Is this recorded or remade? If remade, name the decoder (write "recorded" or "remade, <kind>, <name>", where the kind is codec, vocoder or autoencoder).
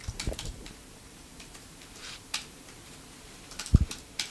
remade, vocoder, BigVGAN v2